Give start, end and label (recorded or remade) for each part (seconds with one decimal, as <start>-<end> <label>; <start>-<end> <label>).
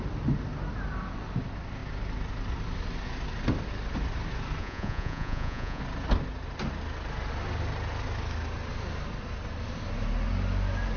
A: 0.0-4.6 recorded; 4.6-5.8 remade; 5.8-11.0 recorded